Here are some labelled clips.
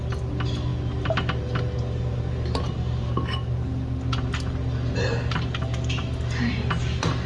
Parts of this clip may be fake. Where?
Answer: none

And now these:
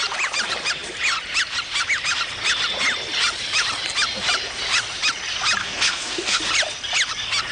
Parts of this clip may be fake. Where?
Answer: 5.6-6.4 (codec, SNAC)

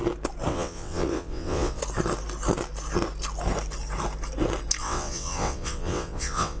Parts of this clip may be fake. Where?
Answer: 0.5-1.8 (vocoder, WaveNeXt); 4.8-6.6

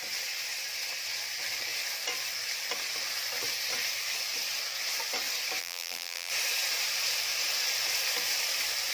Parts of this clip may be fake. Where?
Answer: 5.6-6.3 (vocoder, BigVGAN v2)

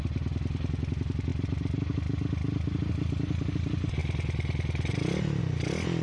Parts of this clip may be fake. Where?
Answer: none

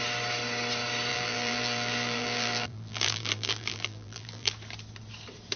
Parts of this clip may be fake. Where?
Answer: 1.1-4.5 (vocoder, BigVGAN v2)